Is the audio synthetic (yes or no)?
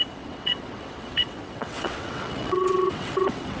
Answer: yes